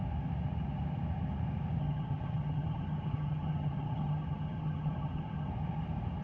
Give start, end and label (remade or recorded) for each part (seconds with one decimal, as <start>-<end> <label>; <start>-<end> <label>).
0.0-1.8 recorded; 1.8-5.5 remade; 5.5-6.2 recorded